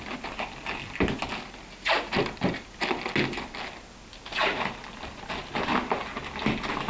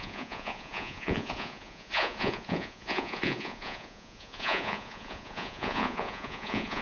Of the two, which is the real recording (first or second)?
first